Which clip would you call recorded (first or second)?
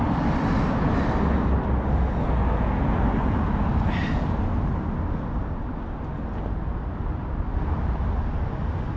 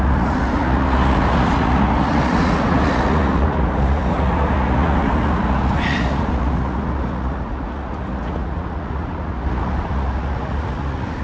first